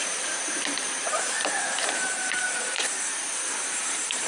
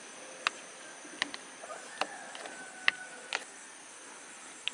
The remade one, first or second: first